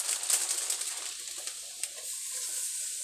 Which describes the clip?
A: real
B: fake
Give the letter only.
A